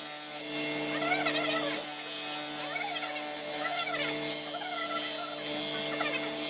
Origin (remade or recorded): recorded